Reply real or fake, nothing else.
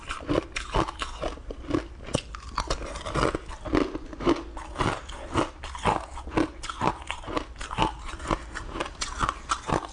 real